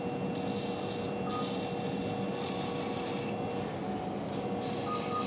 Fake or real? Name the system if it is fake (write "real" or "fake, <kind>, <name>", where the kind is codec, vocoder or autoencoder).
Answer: real